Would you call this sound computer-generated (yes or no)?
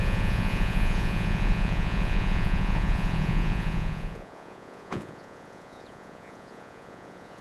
yes